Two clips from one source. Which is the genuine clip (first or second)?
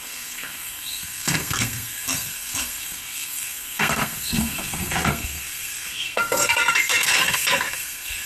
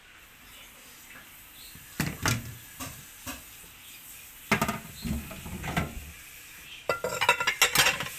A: second